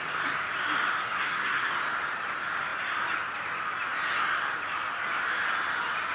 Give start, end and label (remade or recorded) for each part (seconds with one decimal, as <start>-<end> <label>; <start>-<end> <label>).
0.0-1.0 recorded; 1.0-1.7 remade; 1.7-6.1 recorded